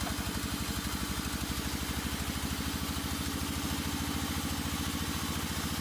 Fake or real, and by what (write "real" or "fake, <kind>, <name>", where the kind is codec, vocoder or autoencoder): real